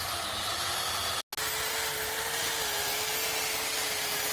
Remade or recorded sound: recorded